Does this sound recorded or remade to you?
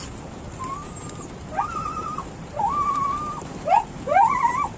recorded